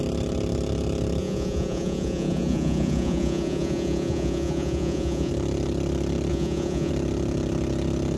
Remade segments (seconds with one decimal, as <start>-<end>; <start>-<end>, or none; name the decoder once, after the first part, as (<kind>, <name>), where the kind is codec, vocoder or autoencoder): 1.2-5.3 (vocoder, Vocos); 6.3-6.9